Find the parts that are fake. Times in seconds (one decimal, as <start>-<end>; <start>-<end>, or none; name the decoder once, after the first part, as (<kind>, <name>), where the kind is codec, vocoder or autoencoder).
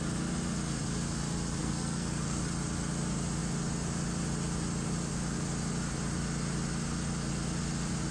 1.6-2.4 (codec, SNAC)